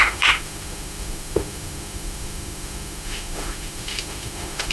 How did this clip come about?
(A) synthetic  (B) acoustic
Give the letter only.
A